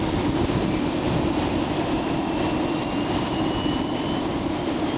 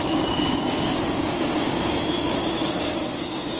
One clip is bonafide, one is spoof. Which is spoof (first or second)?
second